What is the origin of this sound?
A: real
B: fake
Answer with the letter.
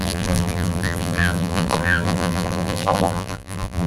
B